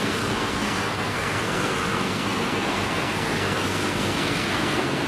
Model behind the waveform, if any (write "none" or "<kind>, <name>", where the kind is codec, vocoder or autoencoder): codec, SNAC